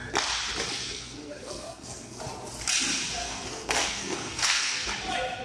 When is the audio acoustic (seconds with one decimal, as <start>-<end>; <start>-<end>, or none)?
0.0-0.8; 2.2-3.2; 4.9-5.4